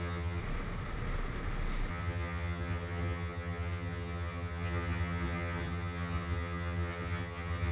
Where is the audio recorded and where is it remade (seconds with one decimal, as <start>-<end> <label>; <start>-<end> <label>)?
0.0-0.4 remade; 0.4-1.9 recorded; 1.9-7.7 remade